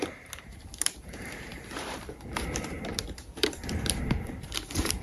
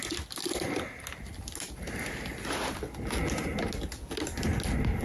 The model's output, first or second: first